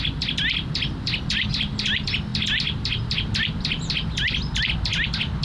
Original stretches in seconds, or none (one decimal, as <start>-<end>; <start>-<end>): 0.0-5.4